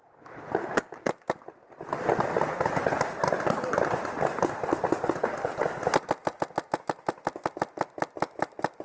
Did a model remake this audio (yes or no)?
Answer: no